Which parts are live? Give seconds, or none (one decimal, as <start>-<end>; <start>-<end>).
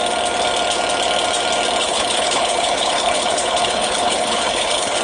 0.0-1.8